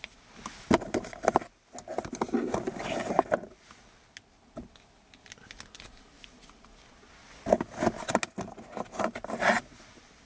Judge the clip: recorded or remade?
recorded